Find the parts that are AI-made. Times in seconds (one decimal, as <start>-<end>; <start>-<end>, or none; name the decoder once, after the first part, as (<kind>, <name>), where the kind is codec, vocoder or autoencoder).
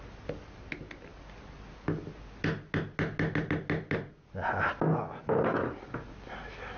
none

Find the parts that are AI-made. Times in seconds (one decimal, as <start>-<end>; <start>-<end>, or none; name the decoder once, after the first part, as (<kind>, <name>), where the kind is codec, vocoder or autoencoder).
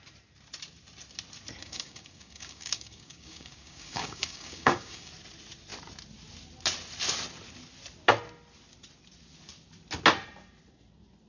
1.6-5.1 (codec, DAC)